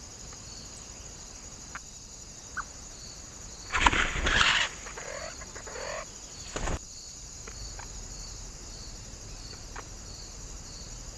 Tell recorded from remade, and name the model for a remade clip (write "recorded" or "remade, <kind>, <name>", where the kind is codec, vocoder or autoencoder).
remade, vocoder, BigVGAN v2